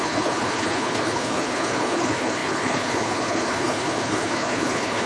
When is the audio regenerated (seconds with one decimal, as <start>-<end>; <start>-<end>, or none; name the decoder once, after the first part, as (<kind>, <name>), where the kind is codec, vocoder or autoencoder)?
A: 0.0-5.1 (codec, HILCodec)